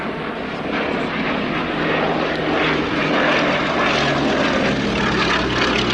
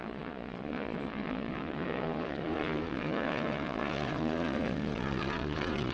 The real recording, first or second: first